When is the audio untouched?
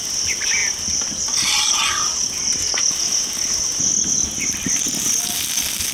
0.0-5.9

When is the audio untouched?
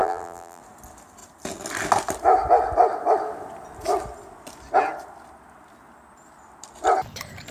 0.6-7.5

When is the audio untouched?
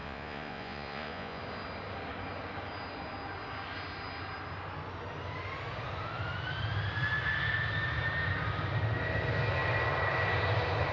1.4-10.9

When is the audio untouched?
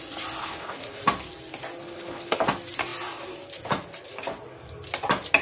0.0-0.4; 1.0-1.8; 2.4-5.4